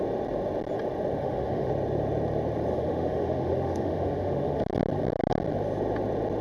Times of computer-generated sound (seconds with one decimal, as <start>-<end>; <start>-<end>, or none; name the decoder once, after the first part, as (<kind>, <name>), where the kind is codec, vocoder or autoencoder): 1.2-1.7 (autoencoder, DAC-VAE); 2.7-4.6